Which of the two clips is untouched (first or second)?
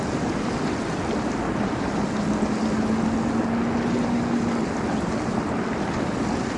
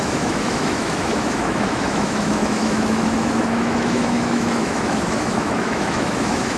first